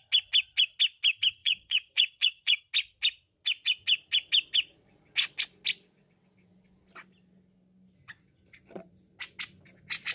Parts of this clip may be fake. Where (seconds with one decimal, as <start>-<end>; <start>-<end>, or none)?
1.4-2.6